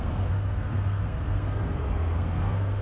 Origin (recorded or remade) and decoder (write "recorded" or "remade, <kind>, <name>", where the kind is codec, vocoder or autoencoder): remade, codec, SNAC